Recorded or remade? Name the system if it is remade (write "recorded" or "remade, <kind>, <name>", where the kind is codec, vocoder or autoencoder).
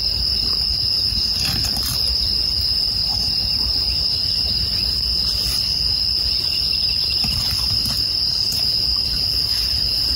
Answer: recorded